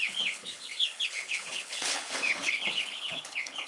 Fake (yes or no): yes